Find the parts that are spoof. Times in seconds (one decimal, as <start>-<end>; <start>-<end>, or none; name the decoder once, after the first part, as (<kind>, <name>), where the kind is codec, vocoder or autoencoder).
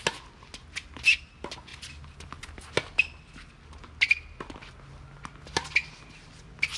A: none